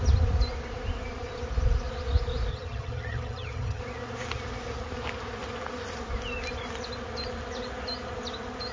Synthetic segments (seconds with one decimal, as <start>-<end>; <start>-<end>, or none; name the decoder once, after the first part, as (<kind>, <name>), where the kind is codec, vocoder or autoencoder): 2.5-3.8 (vocoder, HiFi-GAN)